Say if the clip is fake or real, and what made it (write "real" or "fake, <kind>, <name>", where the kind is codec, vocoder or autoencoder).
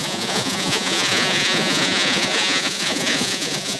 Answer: fake, vocoder, Vocos